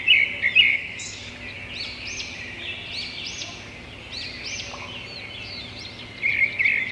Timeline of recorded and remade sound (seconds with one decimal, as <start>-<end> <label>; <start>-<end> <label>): 0.0-0.7 recorded; 0.7-1.3 remade; 1.3-6.9 recorded